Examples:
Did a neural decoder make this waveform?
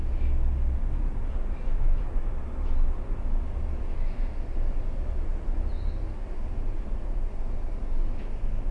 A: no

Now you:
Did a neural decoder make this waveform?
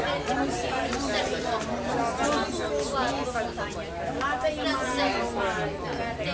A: no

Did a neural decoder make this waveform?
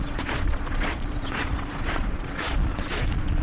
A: yes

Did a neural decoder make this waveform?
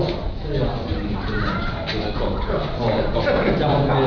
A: no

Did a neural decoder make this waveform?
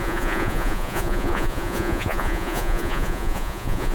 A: yes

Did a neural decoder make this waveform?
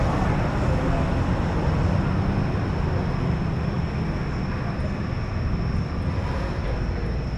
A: no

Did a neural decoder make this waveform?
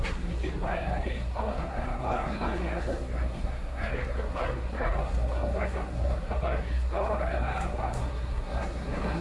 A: yes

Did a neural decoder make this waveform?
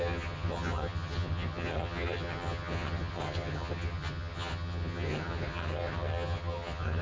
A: yes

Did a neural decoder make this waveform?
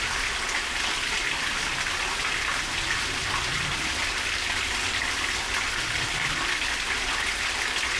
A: no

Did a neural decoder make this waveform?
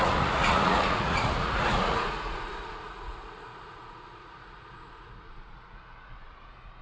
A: yes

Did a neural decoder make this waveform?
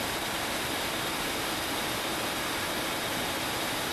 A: no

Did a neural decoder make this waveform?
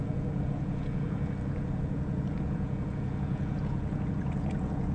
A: yes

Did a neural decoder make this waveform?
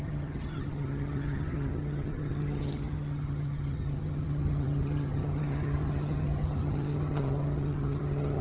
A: yes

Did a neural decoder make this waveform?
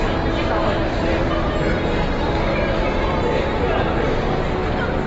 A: no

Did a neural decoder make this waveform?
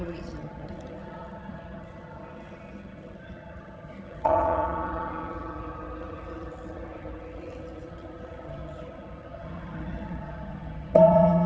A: yes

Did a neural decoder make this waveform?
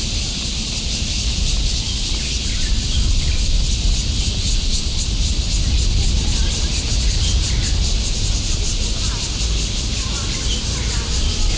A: no